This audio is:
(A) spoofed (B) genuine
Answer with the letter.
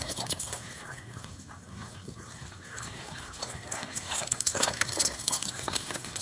A